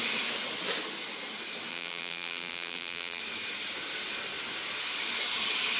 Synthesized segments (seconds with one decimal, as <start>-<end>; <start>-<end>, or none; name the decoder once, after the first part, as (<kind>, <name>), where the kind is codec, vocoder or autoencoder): 1.7-3.2 (vocoder, BigVGAN v2)